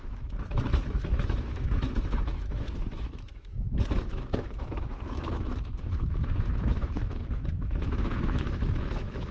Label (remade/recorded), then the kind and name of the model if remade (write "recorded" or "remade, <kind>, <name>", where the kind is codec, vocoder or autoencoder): remade, autoencoder, DAC-VAE